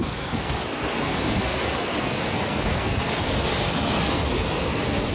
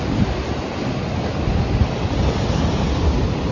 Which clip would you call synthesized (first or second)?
first